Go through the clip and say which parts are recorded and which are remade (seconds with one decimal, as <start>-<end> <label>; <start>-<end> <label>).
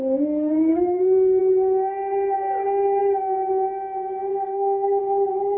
0.0-0.7 recorded; 0.7-1.4 remade; 1.4-4.3 recorded; 4.3-5.0 remade; 5.0-5.6 recorded